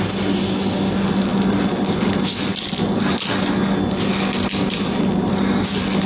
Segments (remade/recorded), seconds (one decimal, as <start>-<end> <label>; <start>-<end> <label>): 0.0-1.3 recorded; 1.3-2.1 remade; 2.1-6.1 recorded